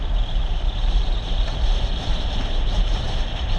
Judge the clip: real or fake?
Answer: fake